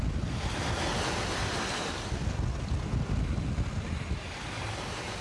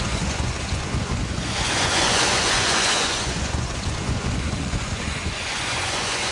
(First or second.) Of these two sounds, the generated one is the second